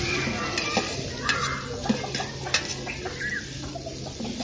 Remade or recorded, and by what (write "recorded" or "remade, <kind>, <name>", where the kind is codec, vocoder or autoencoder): recorded